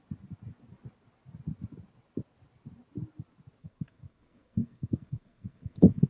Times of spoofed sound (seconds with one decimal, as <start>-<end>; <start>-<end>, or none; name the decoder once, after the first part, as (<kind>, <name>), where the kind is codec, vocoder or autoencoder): 3.6-6.1 (codec, SNAC)